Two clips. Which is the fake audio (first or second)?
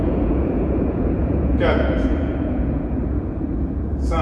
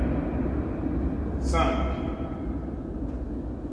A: first